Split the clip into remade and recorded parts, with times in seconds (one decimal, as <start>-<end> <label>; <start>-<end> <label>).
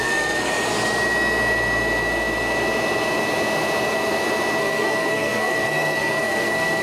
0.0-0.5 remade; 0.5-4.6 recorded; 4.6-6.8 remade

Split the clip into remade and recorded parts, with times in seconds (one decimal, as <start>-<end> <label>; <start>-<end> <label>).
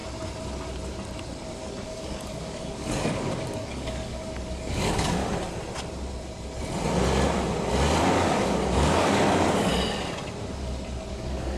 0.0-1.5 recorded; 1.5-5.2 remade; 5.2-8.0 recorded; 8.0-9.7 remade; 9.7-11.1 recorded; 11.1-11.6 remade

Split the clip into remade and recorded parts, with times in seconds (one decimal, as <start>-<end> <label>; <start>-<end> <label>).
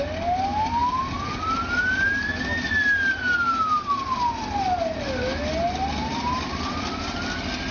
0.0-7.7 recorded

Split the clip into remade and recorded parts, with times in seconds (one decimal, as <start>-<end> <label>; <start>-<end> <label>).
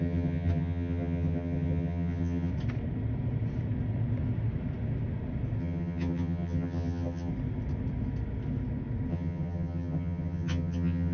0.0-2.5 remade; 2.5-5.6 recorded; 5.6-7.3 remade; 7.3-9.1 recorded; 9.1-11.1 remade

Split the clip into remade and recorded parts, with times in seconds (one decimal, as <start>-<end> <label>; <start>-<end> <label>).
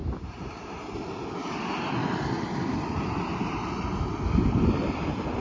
0.0-1.0 remade; 1.0-3.3 recorded; 3.3-4.0 remade; 4.0-5.4 recorded